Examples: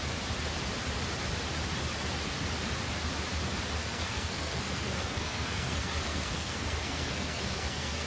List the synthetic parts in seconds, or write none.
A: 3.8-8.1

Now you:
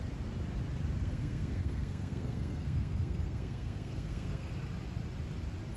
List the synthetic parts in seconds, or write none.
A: 1.0-4.5